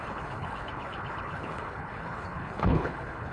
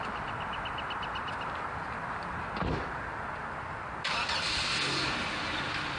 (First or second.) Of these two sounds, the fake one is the first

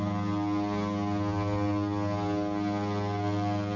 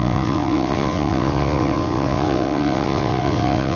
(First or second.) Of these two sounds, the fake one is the second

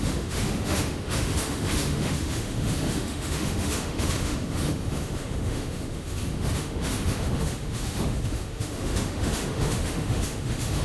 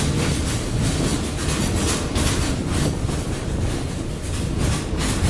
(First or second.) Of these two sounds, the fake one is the first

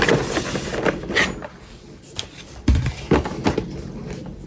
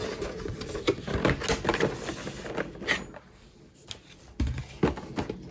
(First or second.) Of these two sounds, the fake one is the first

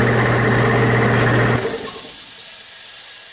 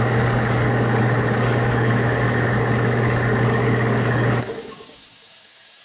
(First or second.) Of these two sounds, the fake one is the second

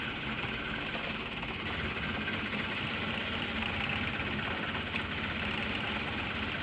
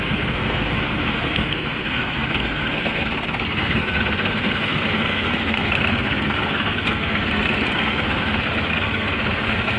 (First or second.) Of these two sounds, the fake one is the second